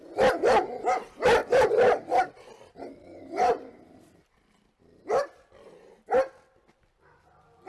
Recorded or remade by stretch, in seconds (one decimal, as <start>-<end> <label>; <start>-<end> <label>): 0.0-7.7 recorded